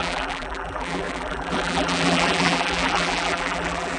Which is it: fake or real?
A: fake